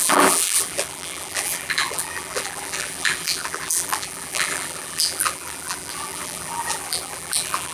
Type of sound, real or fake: fake